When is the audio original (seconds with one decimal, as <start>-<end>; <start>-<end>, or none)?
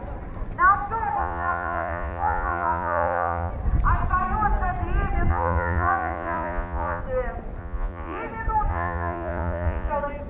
0.0-1.2; 3.5-5.3; 7.0-7.6; 8.2-8.7; 9.9-10.3